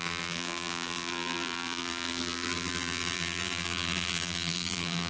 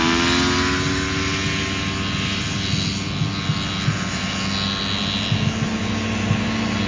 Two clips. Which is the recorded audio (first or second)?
second